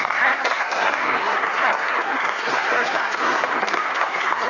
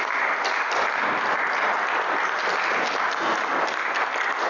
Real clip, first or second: second